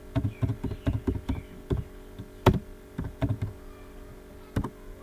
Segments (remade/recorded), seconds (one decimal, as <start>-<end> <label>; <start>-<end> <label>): 0.0-5.0 recorded